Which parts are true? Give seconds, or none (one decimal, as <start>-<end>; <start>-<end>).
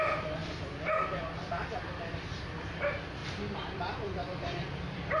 0.0-0.4; 2.8-3.2